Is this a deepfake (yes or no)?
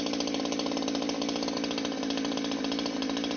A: no